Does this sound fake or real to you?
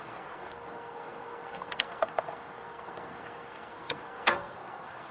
fake